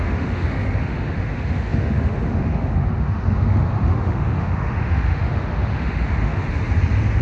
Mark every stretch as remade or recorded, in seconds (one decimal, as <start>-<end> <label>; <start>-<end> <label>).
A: 0.0-6.4 remade; 6.4-7.2 recorded

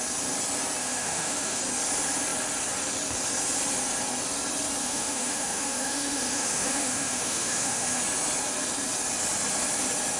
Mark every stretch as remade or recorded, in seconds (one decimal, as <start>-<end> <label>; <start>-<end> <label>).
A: 0.0-0.8 recorded; 0.8-1.6 remade; 1.6-4.8 recorded; 4.8-8.0 remade; 8.0-10.2 recorded

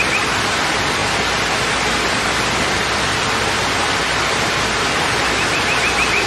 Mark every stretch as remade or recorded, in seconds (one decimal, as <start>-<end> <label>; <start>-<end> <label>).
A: 0.0-6.3 recorded

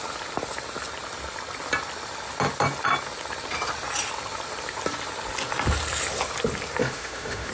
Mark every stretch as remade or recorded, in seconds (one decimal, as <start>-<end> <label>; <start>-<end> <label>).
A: 0.0-6.8 recorded; 6.8-7.5 remade